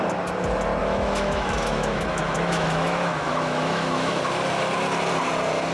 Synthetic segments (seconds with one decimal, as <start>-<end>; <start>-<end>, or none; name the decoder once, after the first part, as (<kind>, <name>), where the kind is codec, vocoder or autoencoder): 0.8-4.2 (autoencoder, DAC-VAE)